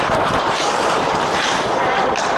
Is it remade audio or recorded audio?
remade